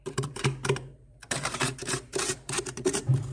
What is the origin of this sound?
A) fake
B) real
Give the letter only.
A